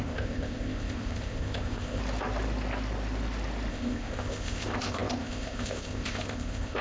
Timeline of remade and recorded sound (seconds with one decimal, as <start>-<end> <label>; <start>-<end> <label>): 0.0-2.0 remade; 2.0-3.7 recorded; 3.7-6.8 remade